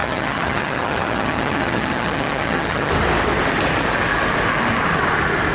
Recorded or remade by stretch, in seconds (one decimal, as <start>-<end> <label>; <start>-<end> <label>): 0.0-2.9 remade; 2.9-5.5 recorded